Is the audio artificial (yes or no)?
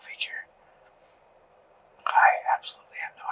no